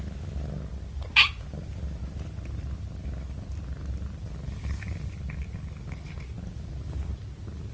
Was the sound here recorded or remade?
recorded